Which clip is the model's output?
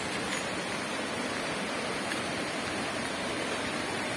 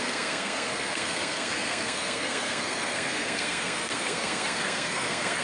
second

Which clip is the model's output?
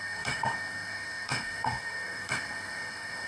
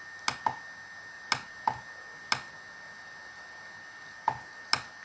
first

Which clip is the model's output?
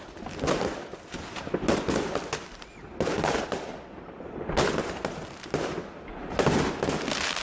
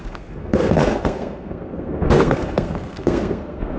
second